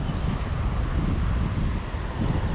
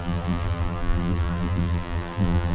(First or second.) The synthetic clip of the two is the second